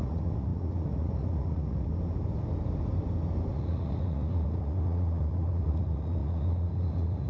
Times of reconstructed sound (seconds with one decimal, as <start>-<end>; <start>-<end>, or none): 0.0-1.9; 3.5-7.3

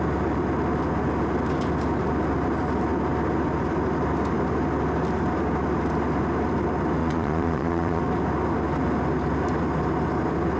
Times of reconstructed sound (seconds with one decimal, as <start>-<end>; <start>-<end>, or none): 7.0-8.0

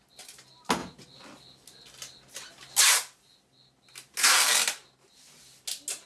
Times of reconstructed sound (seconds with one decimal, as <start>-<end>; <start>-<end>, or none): none

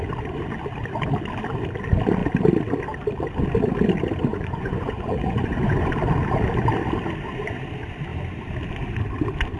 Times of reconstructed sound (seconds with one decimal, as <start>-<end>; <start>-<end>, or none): 4.3-5.9

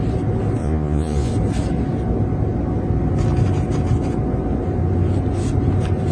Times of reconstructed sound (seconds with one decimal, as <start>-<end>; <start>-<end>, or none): 0.6-1.3

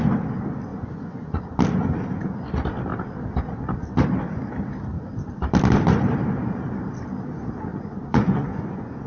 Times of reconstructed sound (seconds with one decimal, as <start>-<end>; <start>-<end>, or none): 0.7-1.4; 7.7-9.1

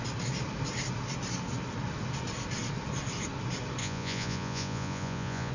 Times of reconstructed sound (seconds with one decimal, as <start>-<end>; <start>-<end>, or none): 3.8-5.5

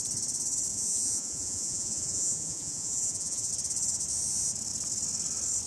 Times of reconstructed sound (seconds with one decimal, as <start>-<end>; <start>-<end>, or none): 0.7-3.5